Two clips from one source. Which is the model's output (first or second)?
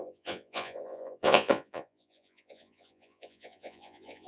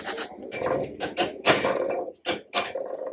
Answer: first